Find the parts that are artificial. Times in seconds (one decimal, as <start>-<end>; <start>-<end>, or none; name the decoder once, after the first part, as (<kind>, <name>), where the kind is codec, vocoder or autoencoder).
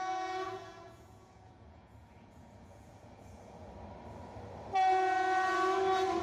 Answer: 0.0-3.7 (vocoder, Vocos)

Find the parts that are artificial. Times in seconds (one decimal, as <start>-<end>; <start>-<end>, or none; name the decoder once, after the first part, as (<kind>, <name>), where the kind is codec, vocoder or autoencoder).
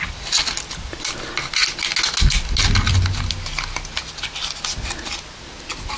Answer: none